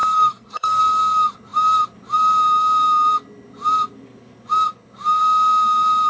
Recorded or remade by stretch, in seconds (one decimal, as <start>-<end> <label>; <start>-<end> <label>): 0.0-0.8 remade; 0.8-6.1 recorded

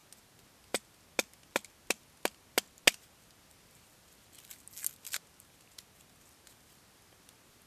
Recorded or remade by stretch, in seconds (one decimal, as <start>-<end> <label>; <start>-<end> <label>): 0.0-7.7 recorded